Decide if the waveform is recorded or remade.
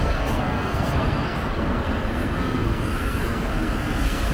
remade